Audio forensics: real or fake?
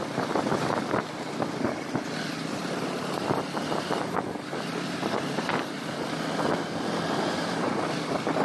real